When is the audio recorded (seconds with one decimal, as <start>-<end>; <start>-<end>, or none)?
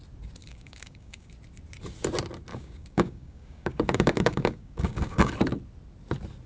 0.0-0.4; 1.3-2.5; 5.3-6.5